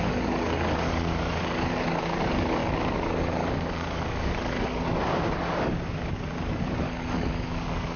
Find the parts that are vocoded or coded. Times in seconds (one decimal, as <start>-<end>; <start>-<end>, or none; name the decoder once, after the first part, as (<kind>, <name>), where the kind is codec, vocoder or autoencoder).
0.0-8.0 (codec, DAC)